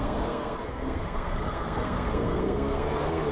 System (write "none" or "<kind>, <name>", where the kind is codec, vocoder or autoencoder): codec, SNAC